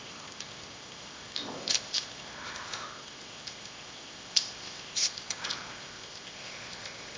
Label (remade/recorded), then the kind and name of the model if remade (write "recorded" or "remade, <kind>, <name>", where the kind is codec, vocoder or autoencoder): remade, codec, ZipCodec